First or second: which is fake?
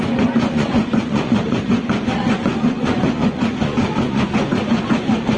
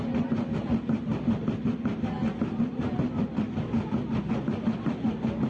first